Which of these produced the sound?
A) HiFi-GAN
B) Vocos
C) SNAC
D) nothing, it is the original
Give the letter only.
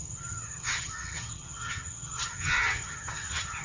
A